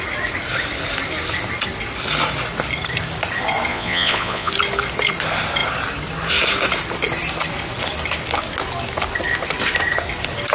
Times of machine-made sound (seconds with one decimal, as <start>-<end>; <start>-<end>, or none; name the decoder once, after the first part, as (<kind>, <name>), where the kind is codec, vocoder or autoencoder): 3.7-4.5 (vocoder, Vocos)